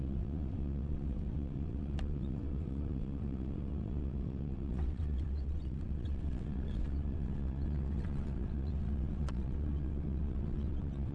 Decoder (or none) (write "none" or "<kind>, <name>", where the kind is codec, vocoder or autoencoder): vocoder, WaveNeXt